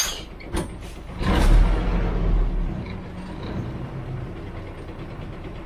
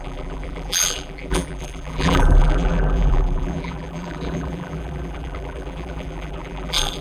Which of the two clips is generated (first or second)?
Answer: second